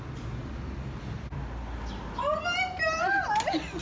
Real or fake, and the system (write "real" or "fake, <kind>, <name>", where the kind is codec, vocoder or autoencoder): real